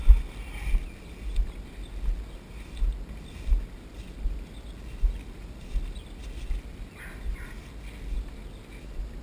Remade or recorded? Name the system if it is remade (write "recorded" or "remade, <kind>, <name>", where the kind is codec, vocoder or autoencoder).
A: recorded